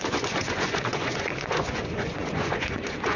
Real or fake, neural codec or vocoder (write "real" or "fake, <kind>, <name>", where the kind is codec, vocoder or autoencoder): fake, vocoder, Vocos